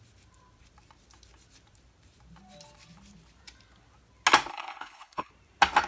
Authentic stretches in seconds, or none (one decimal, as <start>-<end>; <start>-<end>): 0.0-4.5; 5.3-5.9